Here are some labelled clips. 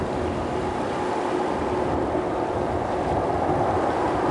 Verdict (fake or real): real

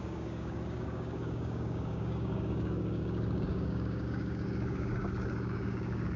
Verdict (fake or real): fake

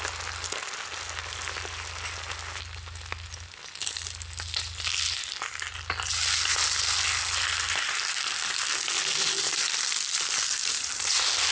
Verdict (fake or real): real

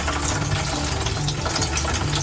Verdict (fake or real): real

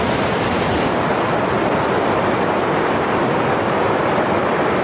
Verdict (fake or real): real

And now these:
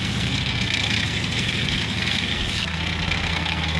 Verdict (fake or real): fake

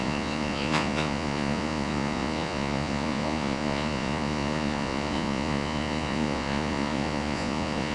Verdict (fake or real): fake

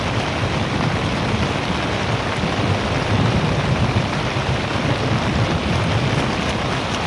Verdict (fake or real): fake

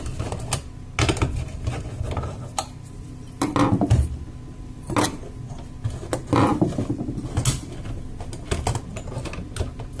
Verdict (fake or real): real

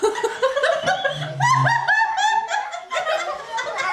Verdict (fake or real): real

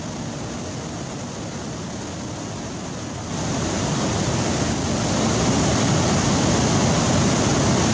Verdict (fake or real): real